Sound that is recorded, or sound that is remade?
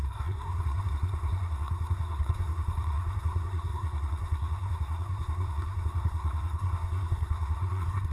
remade